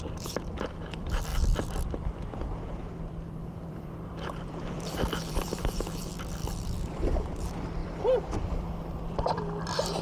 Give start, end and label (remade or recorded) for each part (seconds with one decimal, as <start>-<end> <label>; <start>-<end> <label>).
0.0-10.0 remade